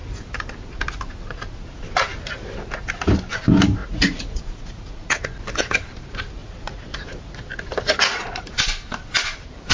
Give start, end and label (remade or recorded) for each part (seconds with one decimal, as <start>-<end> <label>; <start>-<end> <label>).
0.0-3.8 recorded; 3.8-5.2 remade; 5.2-6.4 recorded; 6.4-7.5 remade; 7.5-9.7 recorded